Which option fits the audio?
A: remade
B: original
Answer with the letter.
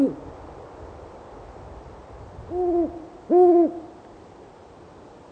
B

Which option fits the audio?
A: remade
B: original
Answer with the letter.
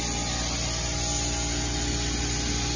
B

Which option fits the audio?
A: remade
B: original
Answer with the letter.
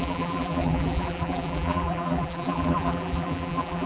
A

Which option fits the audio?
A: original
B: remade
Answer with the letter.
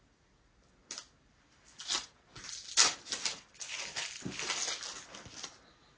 A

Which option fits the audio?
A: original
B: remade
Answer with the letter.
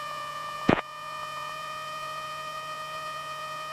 B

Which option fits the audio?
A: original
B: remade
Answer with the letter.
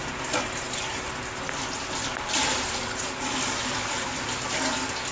A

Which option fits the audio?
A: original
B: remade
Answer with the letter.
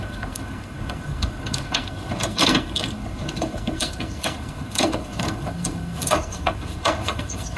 B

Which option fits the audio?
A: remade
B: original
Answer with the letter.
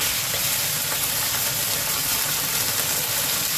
A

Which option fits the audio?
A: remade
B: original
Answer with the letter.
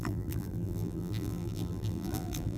A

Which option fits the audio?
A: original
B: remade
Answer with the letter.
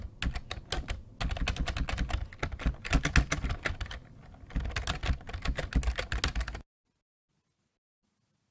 A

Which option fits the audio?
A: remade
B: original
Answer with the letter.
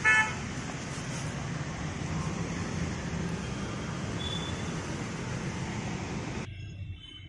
B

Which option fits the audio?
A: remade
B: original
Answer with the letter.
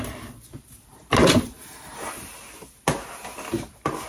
B